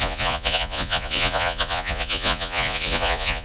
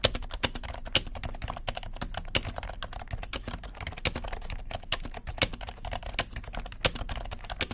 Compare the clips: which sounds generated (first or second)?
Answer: first